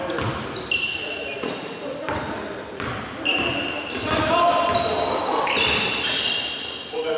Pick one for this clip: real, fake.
real